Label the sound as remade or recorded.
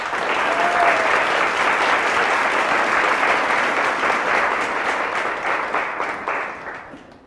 recorded